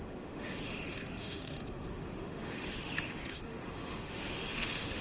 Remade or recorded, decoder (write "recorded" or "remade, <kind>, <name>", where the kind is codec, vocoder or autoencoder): remade, autoencoder, DAC-VAE